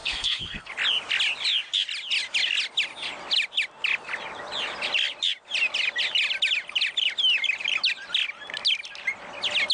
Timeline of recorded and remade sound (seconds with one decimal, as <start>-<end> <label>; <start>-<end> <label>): 0.0-0.7 remade; 0.7-9.7 recorded

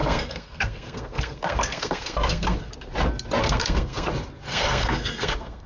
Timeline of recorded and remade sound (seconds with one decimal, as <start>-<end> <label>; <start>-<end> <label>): 0.0-2.7 remade; 2.7-3.4 recorded; 3.4-4.1 remade; 4.1-4.5 recorded; 4.5-5.7 remade

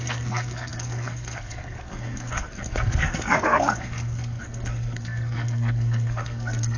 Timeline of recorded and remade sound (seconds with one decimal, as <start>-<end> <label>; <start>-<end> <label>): 0.0-6.8 remade

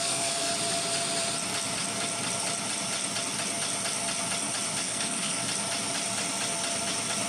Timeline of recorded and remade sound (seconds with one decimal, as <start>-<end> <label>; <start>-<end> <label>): 0.0-0.5 remade; 0.5-4.8 recorded; 4.8-5.4 remade; 5.4-7.3 recorded